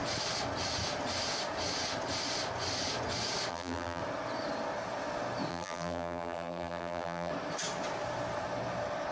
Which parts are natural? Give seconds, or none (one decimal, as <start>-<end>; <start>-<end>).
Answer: 0.0-3.5; 4.0-5.5; 7.3-9.1